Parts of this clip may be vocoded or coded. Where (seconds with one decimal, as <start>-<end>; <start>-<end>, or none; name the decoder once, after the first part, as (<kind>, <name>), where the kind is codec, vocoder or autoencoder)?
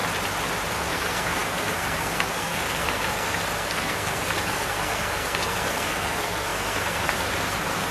0.7-7.9 (codec, SNAC)